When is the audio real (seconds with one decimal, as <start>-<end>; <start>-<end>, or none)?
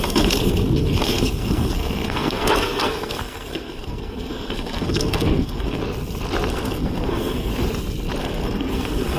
5.8-6.5; 7.5-8.2